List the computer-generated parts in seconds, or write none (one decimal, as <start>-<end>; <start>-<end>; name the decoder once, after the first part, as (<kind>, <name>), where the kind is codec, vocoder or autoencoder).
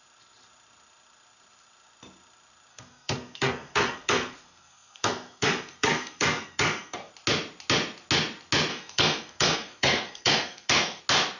2.7-7.1 (codec, SNAC); 8.7-11.0